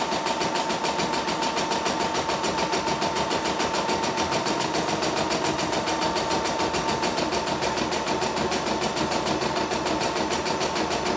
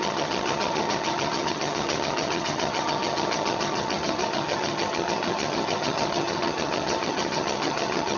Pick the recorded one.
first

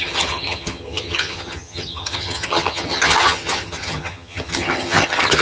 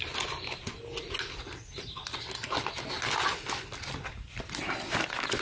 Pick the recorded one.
second